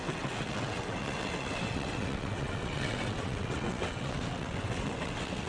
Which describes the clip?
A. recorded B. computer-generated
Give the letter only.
B